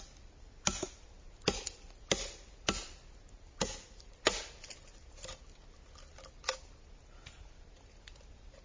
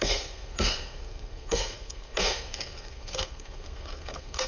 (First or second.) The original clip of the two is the first